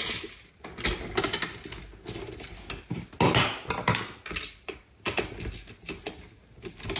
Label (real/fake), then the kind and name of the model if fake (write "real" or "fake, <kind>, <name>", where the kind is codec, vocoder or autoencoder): real